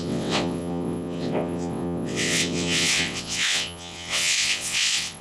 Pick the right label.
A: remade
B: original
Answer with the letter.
A